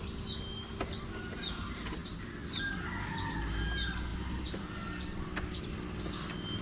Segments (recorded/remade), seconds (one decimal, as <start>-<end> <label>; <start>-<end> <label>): 0.0-6.6 recorded